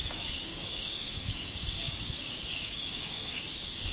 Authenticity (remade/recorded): remade